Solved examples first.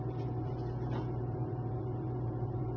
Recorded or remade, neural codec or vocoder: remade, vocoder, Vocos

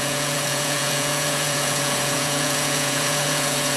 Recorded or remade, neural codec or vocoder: remade, vocoder, Vocos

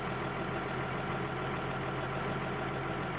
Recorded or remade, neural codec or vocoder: recorded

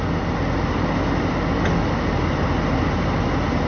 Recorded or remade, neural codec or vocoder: recorded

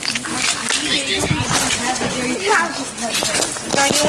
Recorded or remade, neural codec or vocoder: recorded